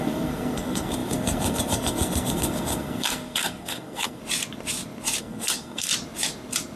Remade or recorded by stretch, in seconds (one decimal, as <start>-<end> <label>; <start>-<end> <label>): 0.0-4.2 remade; 4.2-5.2 recorded; 5.2-5.9 remade; 5.9-6.8 recorded